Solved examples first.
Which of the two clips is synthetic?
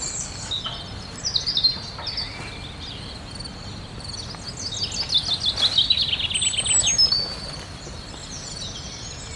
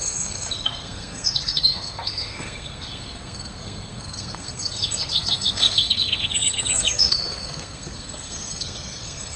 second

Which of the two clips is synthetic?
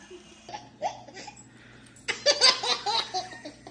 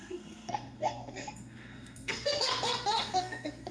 second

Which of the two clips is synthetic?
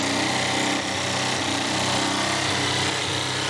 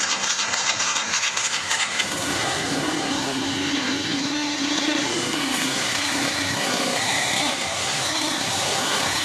second